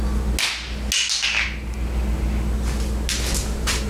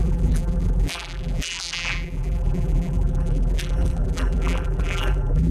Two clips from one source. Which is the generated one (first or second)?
second